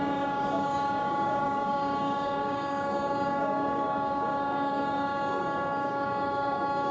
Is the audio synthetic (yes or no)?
yes